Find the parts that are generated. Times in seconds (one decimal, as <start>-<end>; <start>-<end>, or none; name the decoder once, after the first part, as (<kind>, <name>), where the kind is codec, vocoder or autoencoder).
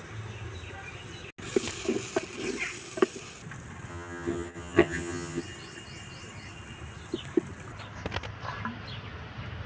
3.9-5.4 (vocoder, HiFi-GAN)